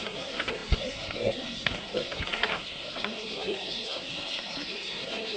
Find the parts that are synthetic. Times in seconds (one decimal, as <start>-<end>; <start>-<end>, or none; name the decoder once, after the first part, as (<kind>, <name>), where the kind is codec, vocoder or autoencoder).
0.0-5.4 (codec, SNAC)